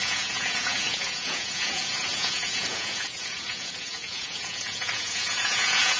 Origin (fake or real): fake